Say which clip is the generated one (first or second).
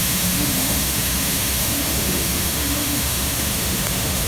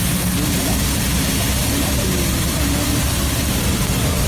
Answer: first